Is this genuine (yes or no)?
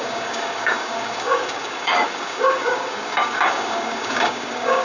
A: no